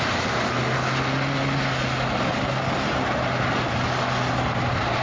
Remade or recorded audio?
recorded